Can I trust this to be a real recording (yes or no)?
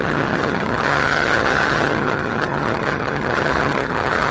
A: no